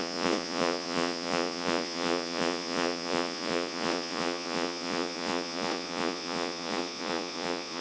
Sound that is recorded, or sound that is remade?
remade